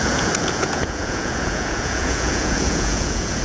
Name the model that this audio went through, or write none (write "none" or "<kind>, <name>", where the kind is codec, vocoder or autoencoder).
vocoder, Vocos